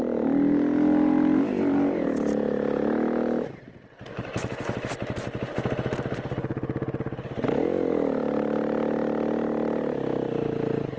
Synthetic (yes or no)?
no